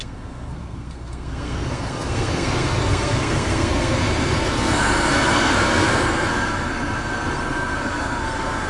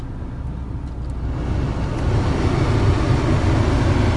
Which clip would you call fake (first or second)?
first